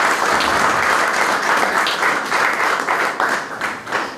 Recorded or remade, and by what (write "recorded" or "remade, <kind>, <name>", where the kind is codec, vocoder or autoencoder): recorded